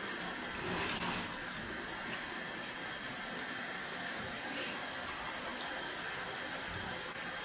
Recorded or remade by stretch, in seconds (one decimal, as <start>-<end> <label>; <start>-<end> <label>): 0.0-7.4 recorded